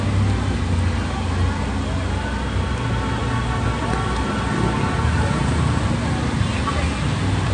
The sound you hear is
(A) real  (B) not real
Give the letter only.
A